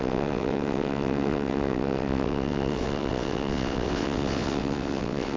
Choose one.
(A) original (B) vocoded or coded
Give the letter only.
B